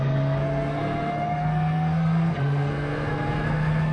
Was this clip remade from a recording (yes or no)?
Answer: yes